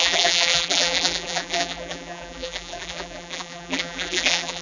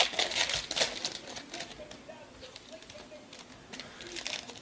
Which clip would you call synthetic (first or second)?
first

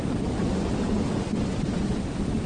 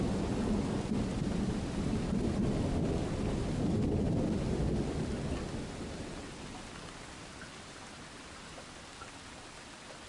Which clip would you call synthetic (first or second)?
first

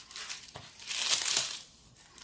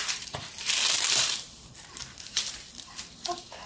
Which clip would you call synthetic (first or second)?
second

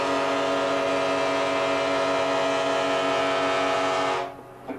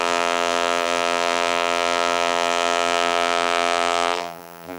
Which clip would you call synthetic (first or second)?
second